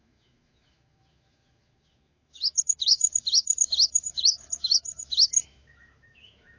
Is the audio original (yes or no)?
no